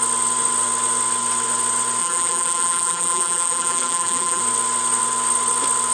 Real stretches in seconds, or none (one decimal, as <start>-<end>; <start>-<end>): 0.0-2.0; 4.4-5.9